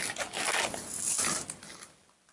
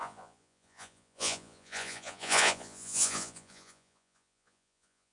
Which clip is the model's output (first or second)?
second